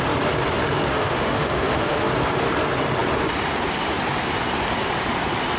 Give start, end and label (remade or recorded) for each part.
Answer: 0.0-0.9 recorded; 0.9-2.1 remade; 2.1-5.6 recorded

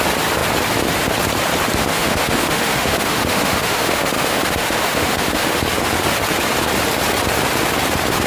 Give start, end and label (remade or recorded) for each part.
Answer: 0.0-1.8 recorded; 1.8-5.6 remade; 5.6-8.3 recorded